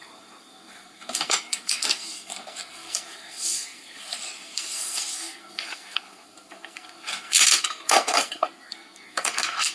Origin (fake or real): fake